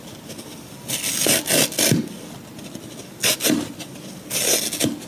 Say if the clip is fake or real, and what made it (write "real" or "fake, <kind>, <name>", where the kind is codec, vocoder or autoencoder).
real